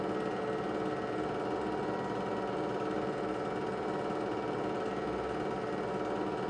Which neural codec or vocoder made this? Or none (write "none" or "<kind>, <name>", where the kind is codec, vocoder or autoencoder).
none